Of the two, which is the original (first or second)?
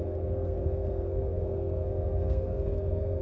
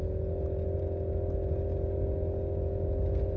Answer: second